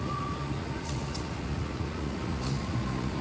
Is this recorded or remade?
remade